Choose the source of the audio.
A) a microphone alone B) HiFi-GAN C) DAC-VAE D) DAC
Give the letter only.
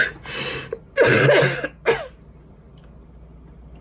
A